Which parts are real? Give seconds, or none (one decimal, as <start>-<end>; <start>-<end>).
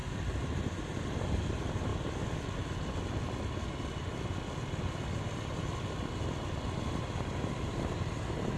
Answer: 1.9-6.8